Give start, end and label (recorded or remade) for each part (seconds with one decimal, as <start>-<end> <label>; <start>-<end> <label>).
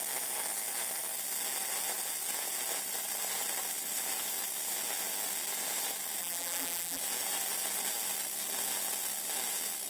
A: 0.0-6.2 recorded; 6.2-7.0 remade; 7.0-9.9 recorded